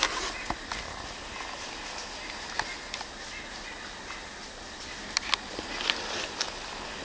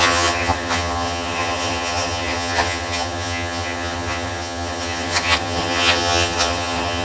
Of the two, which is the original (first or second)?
first